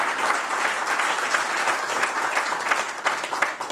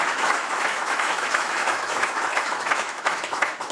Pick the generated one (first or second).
second